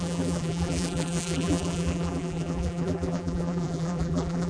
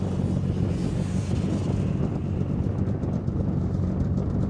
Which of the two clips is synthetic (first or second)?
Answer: first